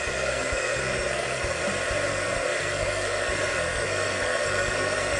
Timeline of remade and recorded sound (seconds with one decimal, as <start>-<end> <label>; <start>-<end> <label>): 0.0-1.6 remade; 1.6-2.1 recorded; 2.1-5.2 remade